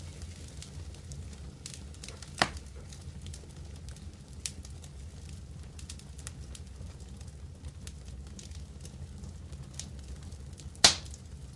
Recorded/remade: recorded